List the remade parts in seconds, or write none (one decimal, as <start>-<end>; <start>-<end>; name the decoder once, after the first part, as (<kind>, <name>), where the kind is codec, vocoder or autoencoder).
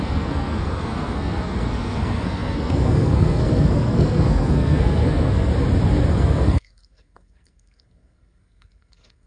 0.0-5.5 (codec, SNAC); 6.1-9.3